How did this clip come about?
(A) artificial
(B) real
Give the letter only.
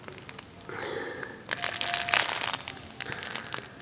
B